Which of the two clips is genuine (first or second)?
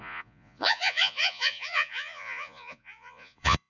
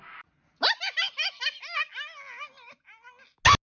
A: second